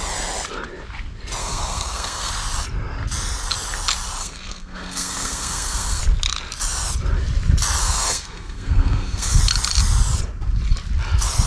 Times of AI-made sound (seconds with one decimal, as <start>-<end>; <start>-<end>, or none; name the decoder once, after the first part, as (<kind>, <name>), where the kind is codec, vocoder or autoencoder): 1.4-2.3 (codec, SNAC); 4.2-6.0; 7.8-9.4